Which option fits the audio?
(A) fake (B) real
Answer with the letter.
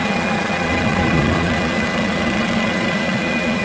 A